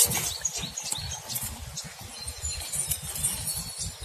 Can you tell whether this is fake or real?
fake